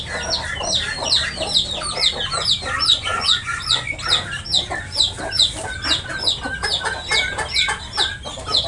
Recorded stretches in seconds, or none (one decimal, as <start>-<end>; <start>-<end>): 0.0-2.9; 3.9-8.7